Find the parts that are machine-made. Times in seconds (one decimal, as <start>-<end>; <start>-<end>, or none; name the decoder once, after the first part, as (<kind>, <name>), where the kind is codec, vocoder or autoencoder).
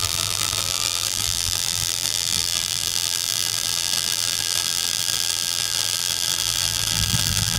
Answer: 0.0-7.6 (vocoder, BigVGAN v2)